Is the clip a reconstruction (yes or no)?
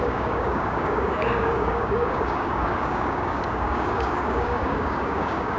yes